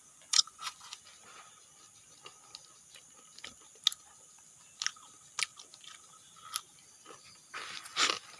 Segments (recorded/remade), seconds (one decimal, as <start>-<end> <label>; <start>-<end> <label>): 0.0-1.0 remade; 1.0-8.4 recorded